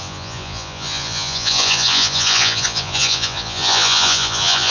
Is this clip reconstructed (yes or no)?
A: yes